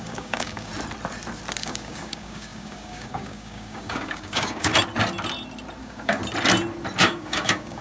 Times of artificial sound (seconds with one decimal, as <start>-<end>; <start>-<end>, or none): 0.0-0.7; 1.6-4.7; 5.8-6.2; 7.0-7.8